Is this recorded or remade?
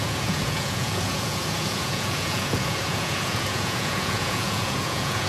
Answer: remade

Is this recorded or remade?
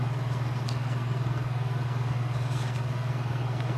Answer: remade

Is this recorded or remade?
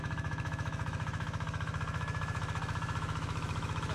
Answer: remade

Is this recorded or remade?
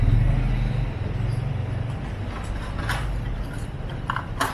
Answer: recorded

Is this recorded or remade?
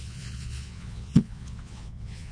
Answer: remade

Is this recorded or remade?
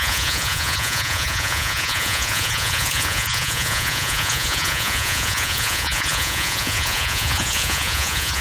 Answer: remade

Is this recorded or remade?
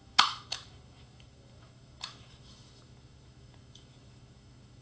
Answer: remade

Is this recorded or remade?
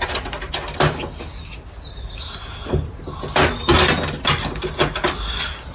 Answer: recorded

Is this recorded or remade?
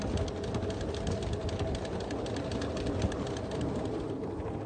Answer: recorded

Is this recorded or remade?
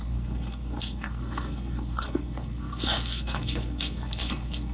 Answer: remade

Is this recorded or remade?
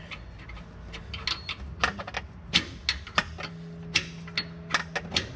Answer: recorded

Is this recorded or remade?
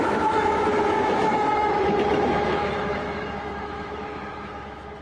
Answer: remade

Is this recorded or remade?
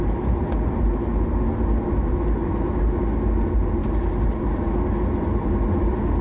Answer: recorded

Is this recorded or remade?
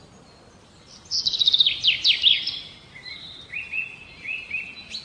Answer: recorded